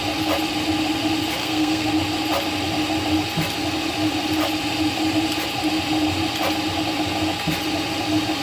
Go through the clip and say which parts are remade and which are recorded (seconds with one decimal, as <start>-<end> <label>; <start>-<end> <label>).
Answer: 0.0-1.4 recorded; 1.4-1.9 remade; 1.9-8.4 recorded